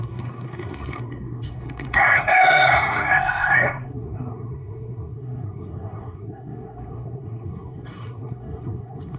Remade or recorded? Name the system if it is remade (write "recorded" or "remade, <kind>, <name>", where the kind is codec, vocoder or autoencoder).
remade, codec, SNAC